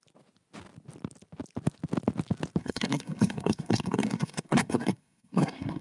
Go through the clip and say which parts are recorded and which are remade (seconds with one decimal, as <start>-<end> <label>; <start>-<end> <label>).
0.0-2.6 recorded; 2.6-5.8 remade